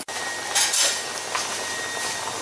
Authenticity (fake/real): real